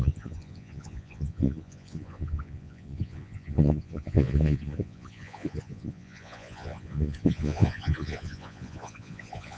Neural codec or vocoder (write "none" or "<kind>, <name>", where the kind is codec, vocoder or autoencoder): vocoder, Vocos